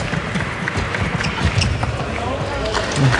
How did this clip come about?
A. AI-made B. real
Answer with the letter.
B